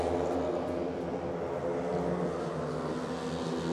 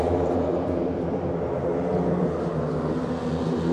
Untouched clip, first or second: first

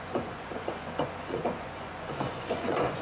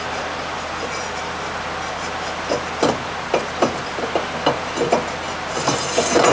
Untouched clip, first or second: second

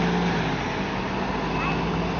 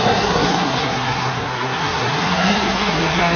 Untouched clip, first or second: first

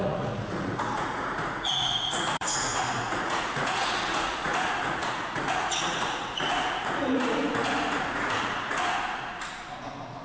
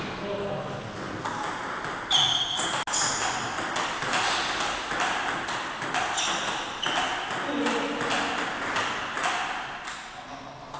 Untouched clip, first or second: second